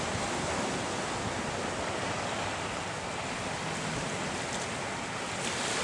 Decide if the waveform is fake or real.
real